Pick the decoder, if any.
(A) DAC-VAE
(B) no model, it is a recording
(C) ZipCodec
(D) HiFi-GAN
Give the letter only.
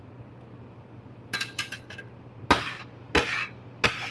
B